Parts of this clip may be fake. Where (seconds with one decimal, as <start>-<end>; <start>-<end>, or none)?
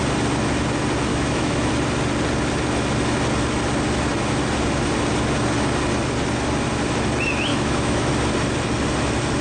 1.1-1.7; 7.5-8.1